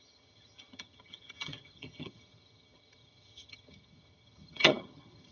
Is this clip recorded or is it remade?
remade